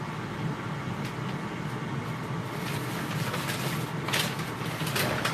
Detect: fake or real real